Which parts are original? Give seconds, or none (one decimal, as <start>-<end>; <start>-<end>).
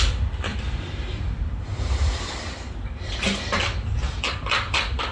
0.0-0.5; 3.6-5.1